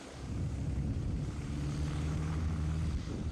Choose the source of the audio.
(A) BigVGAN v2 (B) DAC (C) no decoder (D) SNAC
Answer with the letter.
A